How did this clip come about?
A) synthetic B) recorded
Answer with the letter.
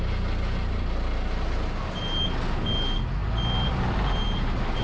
B